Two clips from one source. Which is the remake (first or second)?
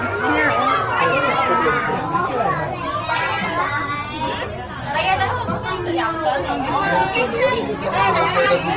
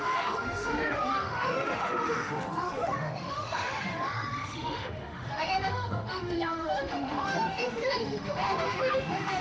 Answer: second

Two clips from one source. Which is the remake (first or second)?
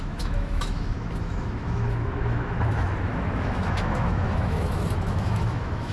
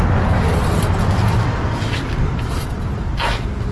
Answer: first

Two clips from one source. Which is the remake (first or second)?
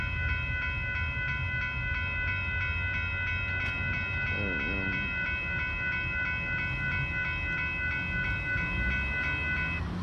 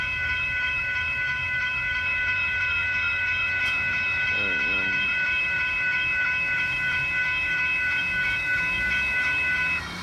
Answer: second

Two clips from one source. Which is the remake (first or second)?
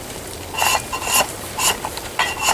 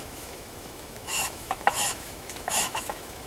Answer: second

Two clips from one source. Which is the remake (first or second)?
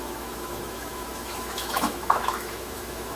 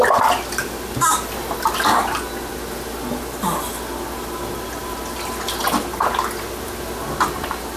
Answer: first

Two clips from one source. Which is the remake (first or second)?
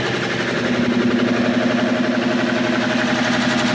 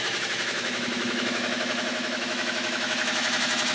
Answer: second